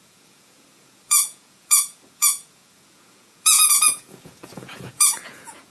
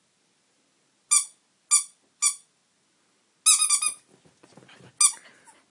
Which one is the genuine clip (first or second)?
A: second